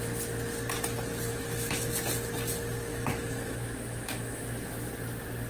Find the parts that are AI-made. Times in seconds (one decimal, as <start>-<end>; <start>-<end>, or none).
1.3-1.9; 2.9-4.9

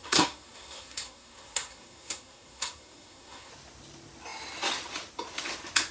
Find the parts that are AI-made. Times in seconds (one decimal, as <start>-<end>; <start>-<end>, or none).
0.0-3.5

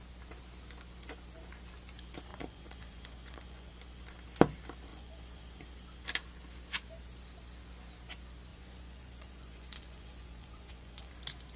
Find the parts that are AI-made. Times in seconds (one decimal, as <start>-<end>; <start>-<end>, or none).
2.3-3.7; 4.9-5.6; 8.5-11.1

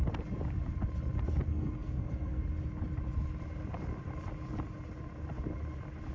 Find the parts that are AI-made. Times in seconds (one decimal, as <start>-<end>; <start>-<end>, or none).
1.5-2.4

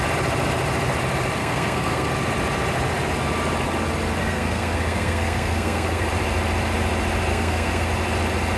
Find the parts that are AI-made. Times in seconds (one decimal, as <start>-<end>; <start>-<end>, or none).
1.4-2.1; 4.2-6.1; 7.3-7.9